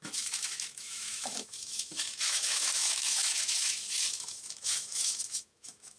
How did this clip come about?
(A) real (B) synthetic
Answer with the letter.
B